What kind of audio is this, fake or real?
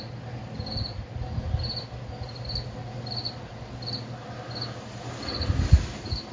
real